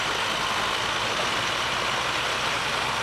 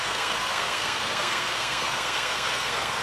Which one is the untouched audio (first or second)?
first